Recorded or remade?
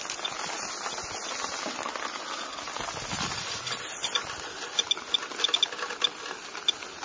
recorded